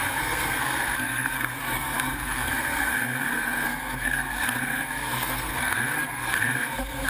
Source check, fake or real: fake